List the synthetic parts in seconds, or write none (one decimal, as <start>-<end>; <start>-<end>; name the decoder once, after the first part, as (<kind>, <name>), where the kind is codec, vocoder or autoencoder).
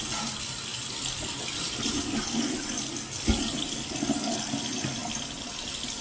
0.7-2.5 (vocoder, BigVGAN v2)